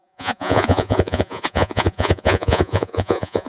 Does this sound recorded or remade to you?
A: remade